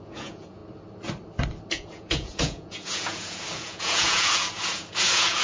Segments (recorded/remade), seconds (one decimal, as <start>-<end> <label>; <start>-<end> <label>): 0.0-0.6 remade; 0.6-1.7 recorded; 1.7-5.4 remade